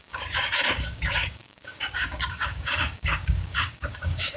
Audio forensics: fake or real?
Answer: fake